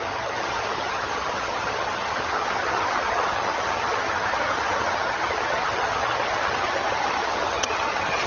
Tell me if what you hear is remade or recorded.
remade